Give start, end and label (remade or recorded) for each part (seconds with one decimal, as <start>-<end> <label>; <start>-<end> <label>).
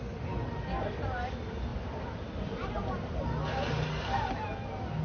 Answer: 0.0-1.7 recorded; 1.7-3.2 remade; 3.2-5.0 recorded